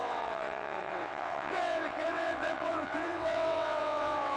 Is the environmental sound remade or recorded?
remade